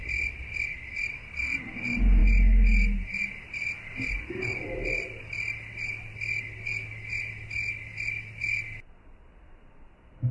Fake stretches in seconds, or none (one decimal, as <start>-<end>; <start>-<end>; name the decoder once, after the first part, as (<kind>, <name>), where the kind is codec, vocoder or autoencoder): none